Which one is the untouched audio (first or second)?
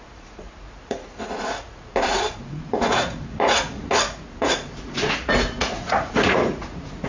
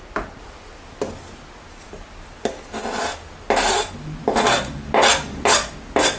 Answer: second